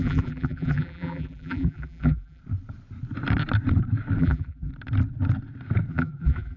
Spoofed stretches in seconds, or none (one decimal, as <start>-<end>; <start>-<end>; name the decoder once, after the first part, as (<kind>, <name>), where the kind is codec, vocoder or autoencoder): 0.0-2.4 (vocoder, BigVGAN v2); 4.2-4.7; 5.9-6.6